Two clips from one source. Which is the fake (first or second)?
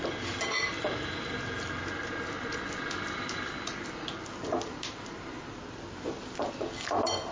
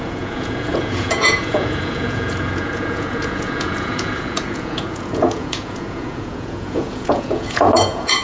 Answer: second